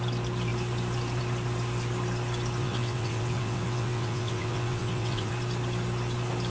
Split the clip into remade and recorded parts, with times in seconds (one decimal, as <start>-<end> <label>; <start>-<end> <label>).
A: 0.0-2.6 recorded; 2.6-5.3 remade; 5.3-6.5 recorded